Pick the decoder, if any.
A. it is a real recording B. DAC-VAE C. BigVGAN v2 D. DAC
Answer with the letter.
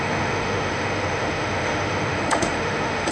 B